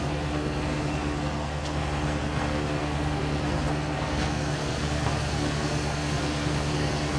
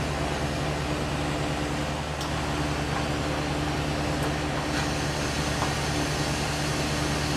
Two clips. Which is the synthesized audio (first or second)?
first